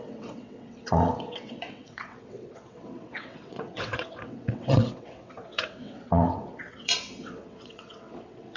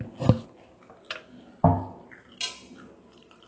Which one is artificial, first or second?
first